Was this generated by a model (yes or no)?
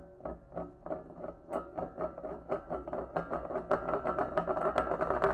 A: no